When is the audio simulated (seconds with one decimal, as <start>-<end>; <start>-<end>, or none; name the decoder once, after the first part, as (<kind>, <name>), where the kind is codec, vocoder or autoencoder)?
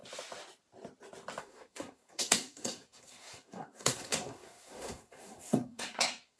1.4-6.4 (codec, SNAC)